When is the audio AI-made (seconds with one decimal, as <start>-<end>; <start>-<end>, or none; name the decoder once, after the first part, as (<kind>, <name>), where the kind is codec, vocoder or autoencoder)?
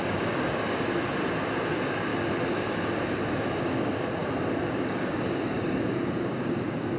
0.0-1.0 (codec, DAC); 1.7-2.1; 3.3-4.2; 4.7-7.0